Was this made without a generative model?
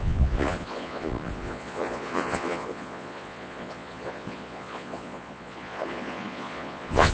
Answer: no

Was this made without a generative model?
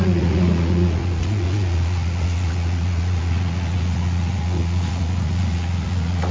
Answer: no